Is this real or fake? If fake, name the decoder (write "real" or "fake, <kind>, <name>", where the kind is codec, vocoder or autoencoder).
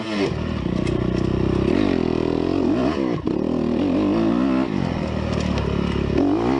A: real